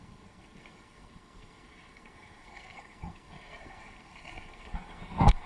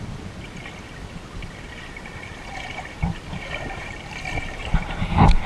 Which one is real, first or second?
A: second